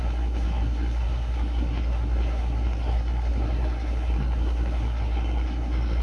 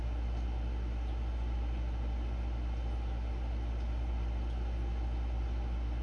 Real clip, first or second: second